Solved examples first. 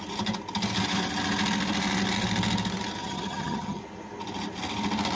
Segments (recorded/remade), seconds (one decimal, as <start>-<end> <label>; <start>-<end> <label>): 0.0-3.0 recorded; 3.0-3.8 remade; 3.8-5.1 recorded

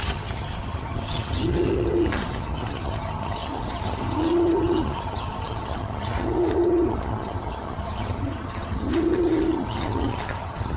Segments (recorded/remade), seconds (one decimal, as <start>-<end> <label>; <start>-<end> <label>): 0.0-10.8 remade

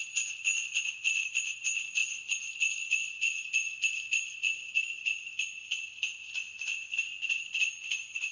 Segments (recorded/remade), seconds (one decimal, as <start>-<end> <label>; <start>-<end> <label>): 0.0-8.3 recorded